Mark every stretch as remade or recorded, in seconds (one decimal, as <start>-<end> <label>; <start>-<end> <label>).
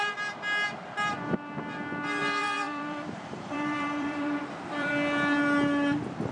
0.0-2.2 recorded; 2.2-4.9 remade; 4.9-6.3 recorded